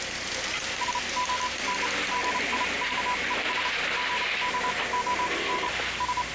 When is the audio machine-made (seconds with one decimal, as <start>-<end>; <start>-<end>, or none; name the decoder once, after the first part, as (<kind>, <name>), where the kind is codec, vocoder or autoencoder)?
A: none